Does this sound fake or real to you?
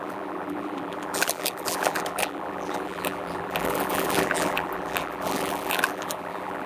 fake